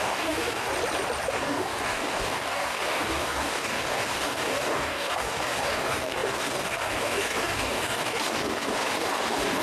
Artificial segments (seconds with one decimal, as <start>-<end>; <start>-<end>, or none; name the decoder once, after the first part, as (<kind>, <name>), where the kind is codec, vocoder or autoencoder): 0.0-0.7 (codec, DAC); 1.3-9.6